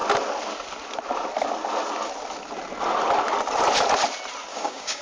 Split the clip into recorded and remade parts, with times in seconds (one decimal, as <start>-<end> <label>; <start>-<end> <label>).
0.0-4.5 recorded; 4.5-5.0 remade